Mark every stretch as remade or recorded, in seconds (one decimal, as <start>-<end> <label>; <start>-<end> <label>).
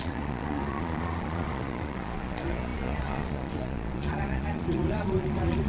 0.0-5.7 remade